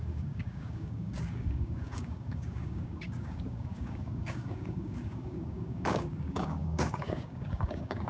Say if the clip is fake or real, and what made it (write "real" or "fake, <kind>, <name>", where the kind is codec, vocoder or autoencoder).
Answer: fake, codec, DAC